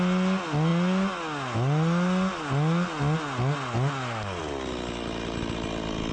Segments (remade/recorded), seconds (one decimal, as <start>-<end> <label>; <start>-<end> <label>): 0.0-6.1 recorded